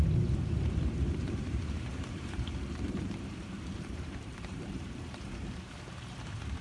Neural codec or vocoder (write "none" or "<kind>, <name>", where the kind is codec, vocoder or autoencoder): vocoder, BigVGAN v2